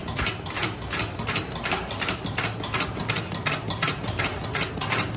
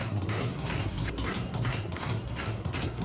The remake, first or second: second